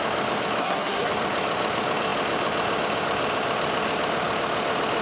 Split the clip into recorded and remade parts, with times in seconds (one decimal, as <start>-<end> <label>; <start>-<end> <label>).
0.0-0.6 recorded; 0.6-1.1 remade; 1.1-5.0 recorded